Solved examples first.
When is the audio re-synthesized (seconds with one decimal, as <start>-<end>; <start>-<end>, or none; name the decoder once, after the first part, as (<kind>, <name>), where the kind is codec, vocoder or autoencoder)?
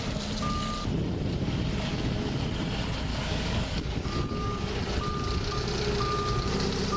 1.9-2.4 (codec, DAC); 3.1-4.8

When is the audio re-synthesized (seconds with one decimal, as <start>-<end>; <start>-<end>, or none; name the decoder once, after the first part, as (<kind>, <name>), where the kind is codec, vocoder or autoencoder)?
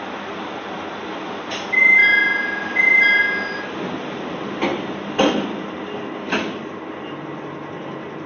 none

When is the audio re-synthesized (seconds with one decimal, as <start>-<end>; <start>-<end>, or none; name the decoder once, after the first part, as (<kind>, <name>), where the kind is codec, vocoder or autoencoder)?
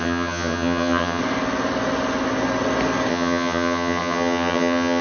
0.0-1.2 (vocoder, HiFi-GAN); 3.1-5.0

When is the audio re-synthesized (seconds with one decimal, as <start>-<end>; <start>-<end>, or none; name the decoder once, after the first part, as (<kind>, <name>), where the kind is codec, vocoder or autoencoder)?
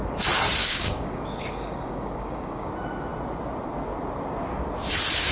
0.6-2.7 (codec, DAC)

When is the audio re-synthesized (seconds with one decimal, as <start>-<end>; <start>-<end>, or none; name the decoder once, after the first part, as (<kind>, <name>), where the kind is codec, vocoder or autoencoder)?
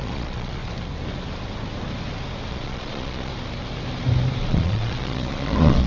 0.0-0.6 (vocoder, Vocos); 2.5-3.3; 4.5-5.9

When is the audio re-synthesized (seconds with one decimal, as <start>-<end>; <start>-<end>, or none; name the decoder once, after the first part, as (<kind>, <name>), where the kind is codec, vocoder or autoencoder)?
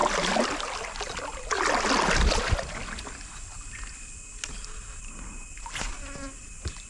none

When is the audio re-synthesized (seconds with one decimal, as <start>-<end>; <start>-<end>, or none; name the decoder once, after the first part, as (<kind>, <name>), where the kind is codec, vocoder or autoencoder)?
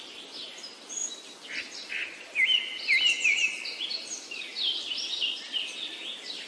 1.0-4.9 (vocoder, BigVGAN v2)